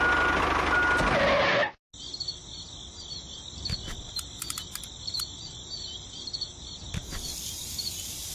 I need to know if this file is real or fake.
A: real